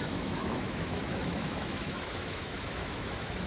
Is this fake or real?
fake